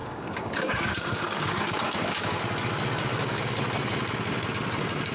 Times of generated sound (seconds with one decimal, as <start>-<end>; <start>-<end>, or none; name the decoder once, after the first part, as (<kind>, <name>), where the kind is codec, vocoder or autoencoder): 0.0-2.4 (codec, DAC); 3.1-3.6